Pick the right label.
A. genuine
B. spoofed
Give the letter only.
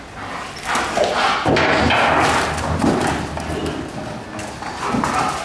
A